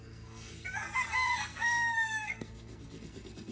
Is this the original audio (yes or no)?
no